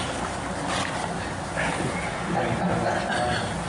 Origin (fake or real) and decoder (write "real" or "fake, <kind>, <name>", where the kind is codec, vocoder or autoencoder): real